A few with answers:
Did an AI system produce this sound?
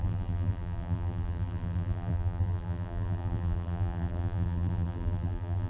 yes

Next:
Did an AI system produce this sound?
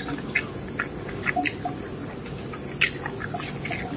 no